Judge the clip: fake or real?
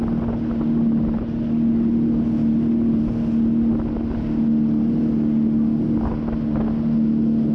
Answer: real